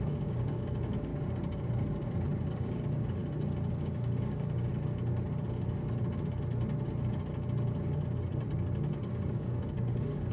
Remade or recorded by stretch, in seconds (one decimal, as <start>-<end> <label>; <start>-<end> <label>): 0.0-1.1 remade; 1.1-2.5 recorded; 2.5-3.2 remade; 3.2-3.7 recorded; 3.7-4.7 remade; 4.7-9.1 recorded; 9.1-10.3 remade